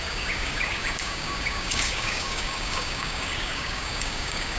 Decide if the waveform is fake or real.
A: fake